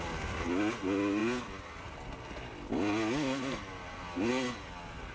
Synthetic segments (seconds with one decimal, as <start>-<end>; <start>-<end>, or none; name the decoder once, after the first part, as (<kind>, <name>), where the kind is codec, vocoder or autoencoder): none